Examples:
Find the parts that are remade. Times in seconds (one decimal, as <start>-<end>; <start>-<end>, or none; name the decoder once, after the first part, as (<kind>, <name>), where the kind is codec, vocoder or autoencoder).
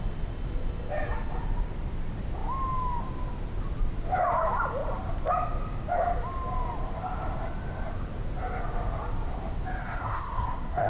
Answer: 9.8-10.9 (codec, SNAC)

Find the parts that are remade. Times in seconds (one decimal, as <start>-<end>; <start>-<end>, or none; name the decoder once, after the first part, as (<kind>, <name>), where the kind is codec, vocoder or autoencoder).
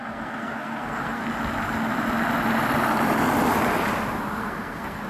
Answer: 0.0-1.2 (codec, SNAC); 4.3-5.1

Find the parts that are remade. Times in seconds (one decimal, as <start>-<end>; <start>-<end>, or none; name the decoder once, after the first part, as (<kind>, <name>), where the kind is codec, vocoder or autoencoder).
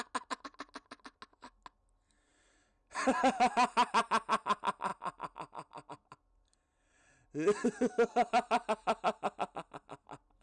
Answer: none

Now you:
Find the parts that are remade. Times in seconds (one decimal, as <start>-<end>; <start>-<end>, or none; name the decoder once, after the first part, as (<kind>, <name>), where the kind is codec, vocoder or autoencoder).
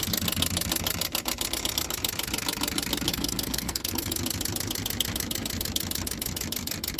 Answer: 3.1-4.1 (codec, SNAC)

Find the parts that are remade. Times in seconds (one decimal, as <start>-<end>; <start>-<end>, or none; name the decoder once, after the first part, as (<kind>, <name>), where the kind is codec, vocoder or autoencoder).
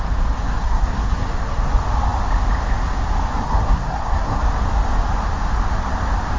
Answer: 0.4-1.7 (codec, SNAC); 3.4-4.4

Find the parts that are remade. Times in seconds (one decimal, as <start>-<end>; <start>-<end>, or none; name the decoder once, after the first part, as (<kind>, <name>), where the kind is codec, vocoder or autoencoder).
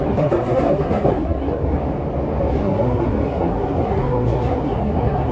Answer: 0.0-1.8 (codec, SNAC); 2.5-5.3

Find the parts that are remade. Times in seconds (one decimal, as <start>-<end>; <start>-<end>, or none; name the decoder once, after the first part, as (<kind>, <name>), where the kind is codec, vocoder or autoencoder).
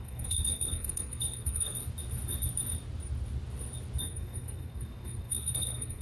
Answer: 0.0-1.8 (codec, SNAC); 4.0-6.0